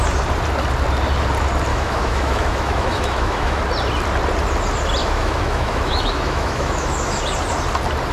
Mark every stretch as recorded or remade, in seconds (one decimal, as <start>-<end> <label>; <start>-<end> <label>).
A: 0.0-1.7 recorded; 1.7-3.6 remade; 3.6-5.0 recorded; 5.0-7.2 remade; 7.2-8.1 recorded